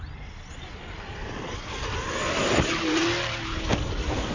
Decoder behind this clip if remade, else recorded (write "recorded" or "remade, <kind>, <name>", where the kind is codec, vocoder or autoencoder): recorded